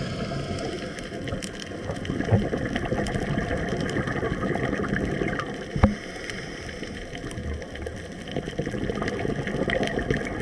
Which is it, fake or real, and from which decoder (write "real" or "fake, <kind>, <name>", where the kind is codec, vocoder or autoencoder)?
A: real